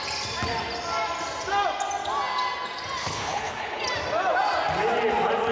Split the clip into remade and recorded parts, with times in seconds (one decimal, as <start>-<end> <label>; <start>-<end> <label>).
0.0-3.0 recorded; 3.0-3.8 remade; 3.8-5.5 recorded